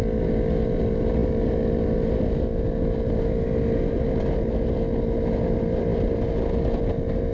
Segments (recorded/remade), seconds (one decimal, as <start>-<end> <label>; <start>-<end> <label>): 0.0-7.3 recorded